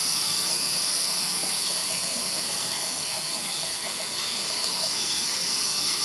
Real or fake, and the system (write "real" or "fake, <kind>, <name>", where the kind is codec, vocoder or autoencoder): fake, codec, SNAC